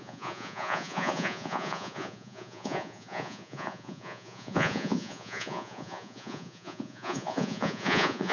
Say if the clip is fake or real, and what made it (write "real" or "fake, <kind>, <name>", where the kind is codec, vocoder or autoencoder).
fake, vocoder, Vocos